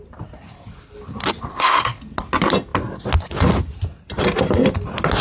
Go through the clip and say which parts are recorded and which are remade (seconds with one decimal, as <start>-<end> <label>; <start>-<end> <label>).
0.0-1.5 recorded; 1.5-2.0 remade; 2.0-5.2 recorded